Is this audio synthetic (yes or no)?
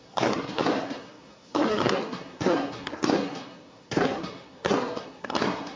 yes